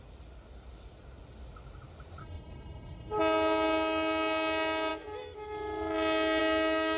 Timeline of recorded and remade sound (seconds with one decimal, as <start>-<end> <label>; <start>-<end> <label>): 0.0-2.2 recorded; 2.2-3.2 remade; 3.2-7.0 recorded